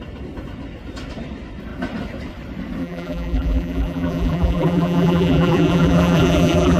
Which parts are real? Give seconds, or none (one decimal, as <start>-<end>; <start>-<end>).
0.0-2.8